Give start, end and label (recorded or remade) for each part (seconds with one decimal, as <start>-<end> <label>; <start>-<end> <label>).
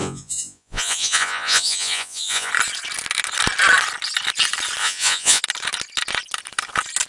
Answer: 0.0-2.5 remade; 2.5-4.8 recorded; 4.8-5.4 remade; 5.4-7.1 recorded